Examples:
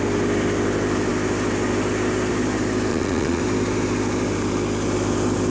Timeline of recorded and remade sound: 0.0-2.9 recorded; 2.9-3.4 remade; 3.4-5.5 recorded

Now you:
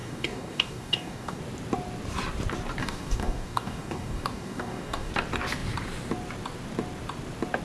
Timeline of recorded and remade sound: 0.0-1.4 remade; 1.4-2.8 recorded; 2.8-5.1 remade; 5.1-7.6 recorded

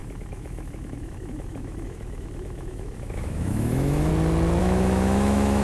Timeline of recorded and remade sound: 0.0-4.1 remade; 4.1-4.6 recorded; 4.6-5.6 remade